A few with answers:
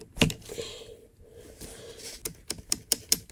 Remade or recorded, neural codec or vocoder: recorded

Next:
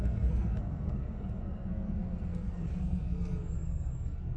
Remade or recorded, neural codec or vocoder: remade, codec, SNAC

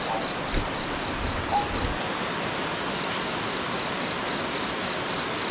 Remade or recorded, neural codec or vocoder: recorded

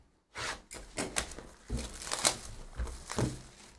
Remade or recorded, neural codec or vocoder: recorded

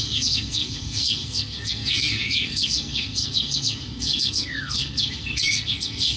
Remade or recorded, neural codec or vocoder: remade, codec, SNAC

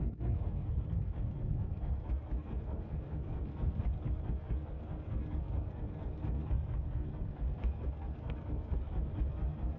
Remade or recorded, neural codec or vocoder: remade, codec, SNAC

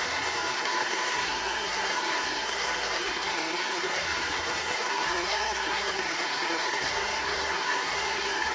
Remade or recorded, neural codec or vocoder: remade, codec, SNAC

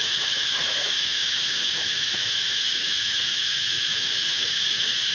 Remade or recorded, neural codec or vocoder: remade, autoencoder, DAC-VAE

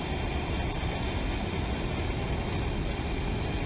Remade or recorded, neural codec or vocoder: recorded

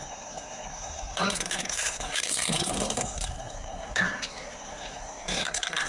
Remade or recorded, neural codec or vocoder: remade, codec, SNAC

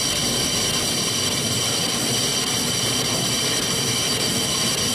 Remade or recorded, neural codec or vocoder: recorded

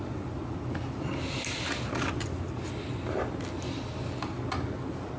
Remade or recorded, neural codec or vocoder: recorded